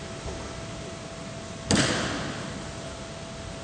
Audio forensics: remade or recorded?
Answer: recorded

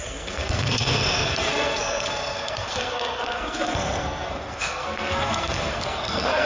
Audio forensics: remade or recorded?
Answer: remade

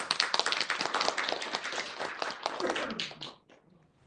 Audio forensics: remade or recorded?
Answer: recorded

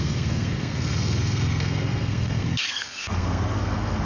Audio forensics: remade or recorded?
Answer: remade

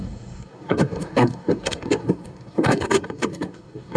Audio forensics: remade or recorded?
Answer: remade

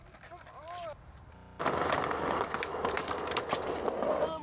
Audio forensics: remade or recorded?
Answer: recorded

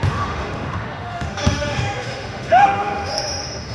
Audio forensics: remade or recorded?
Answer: remade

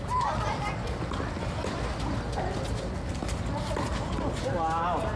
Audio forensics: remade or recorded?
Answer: recorded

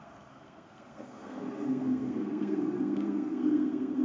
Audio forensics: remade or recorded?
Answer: remade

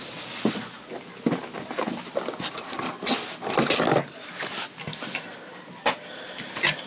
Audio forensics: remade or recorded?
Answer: recorded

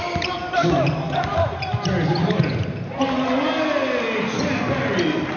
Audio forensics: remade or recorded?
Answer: recorded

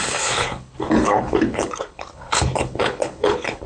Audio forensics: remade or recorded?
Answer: remade